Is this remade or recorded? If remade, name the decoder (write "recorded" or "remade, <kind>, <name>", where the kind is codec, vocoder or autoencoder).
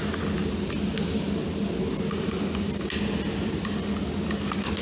recorded